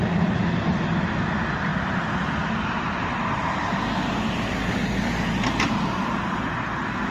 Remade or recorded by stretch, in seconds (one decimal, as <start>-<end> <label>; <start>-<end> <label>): 0.0-7.1 recorded